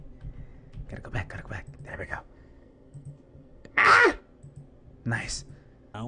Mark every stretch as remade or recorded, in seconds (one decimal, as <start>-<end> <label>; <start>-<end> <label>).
0.0-1.9 recorded; 1.9-4.2 remade; 4.2-6.1 recorded